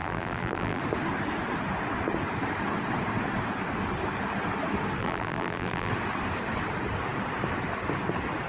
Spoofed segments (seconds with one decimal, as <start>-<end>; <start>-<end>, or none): 0.0-0.8; 5.0-5.9